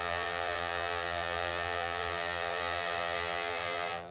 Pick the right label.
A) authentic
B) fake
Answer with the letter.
B